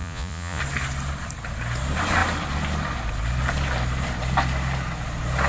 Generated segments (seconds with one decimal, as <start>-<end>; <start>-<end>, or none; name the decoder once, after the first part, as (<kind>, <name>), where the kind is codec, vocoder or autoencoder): 0.0-0.6 (vocoder, Vocos)